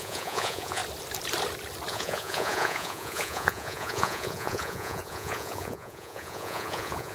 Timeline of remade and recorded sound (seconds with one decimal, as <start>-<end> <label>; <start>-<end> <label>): 0.0-0.8 remade; 0.8-1.9 recorded; 1.9-7.1 remade